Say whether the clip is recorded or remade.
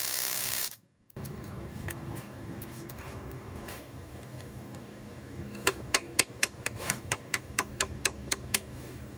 remade